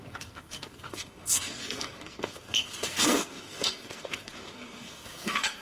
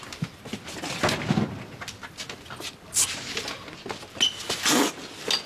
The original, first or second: second